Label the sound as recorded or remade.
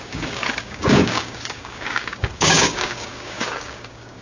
remade